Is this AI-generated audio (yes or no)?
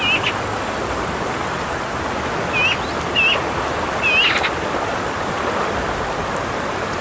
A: no